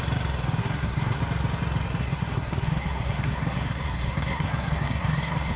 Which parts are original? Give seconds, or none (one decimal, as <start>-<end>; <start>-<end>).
0.0-0.6; 1.2-2.0